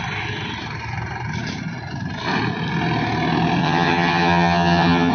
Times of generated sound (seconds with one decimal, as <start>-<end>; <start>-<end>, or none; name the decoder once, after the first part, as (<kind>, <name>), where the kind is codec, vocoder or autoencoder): 3.6-5.1 (vocoder, HiFi-GAN)